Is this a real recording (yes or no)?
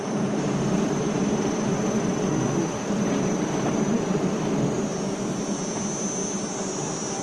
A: yes